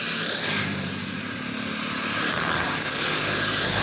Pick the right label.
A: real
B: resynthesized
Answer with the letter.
A